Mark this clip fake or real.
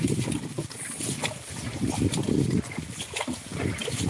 real